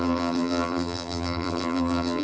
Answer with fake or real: fake